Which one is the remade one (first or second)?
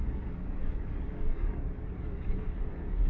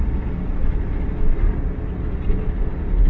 first